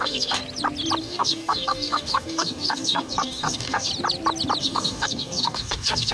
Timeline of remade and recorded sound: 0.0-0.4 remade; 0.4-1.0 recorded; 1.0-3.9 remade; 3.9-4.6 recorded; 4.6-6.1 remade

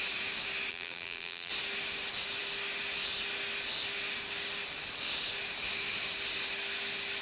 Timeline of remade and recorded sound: 0.0-0.7 recorded; 0.7-1.5 remade; 1.5-7.2 recorded